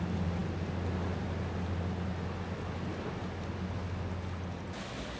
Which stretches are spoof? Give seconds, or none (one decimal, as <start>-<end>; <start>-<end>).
none